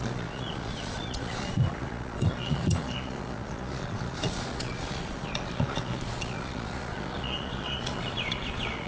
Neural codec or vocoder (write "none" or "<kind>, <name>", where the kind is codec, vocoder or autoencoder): vocoder, Vocos